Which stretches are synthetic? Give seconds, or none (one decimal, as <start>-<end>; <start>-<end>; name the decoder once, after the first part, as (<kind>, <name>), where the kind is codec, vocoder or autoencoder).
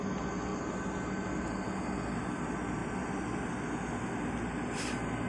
none